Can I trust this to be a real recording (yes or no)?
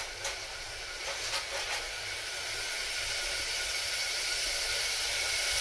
no